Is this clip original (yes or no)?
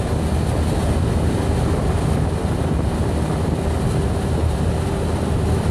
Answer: yes